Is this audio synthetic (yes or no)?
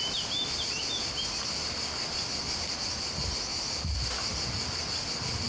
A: no